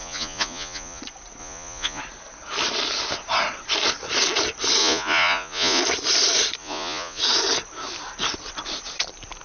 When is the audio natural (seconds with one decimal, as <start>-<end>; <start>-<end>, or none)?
1.0-1.4; 2.0-4.8; 5.8-6.6; 7.2-9.4